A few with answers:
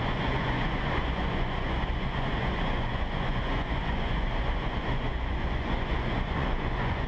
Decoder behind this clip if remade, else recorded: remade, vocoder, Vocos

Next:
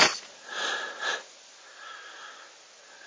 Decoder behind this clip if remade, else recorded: recorded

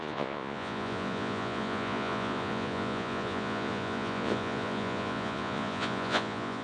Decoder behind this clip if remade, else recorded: remade, vocoder, Vocos